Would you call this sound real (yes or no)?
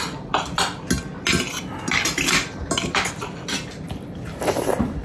yes